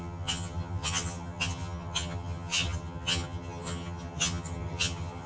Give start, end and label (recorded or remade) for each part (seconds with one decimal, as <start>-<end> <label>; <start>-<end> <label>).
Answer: 0.0-5.3 remade

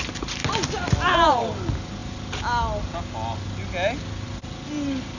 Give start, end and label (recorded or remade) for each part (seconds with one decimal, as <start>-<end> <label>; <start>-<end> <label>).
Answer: 0.0-5.2 recorded

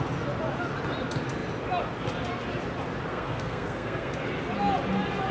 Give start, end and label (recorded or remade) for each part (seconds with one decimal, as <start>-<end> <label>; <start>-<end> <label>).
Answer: 0.0-3.1 recorded; 3.1-4.1 remade; 4.1-5.3 recorded

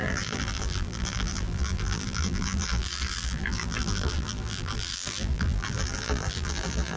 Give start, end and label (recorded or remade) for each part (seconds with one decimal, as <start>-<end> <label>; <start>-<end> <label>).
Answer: 0.0-7.0 remade

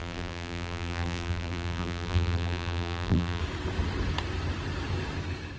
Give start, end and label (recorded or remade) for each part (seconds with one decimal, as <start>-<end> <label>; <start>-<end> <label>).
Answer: 0.0-3.4 remade; 3.4-5.6 recorded

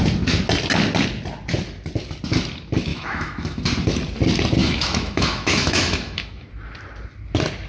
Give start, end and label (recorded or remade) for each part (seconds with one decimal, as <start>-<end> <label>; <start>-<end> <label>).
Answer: 0.0-2.9 recorded; 2.9-3.6 remade; 3.6-4.6 recorded; 4.6-6.5 remade; 6.5-7.7 recorded